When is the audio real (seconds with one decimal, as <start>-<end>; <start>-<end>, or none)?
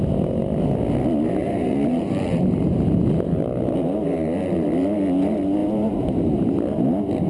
0.0-1.4; 3.4-5.6; 6.5-7.3